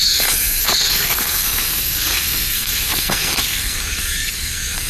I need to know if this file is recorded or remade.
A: remade